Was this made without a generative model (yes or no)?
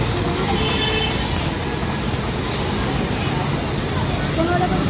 yes